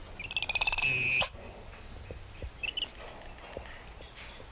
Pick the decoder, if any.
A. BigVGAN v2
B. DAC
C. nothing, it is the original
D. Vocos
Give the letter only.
C